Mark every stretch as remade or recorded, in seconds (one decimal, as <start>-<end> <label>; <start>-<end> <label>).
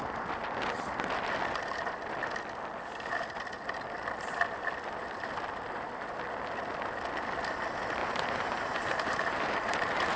0.0-8.0 recorded; 8.0-10.2 remade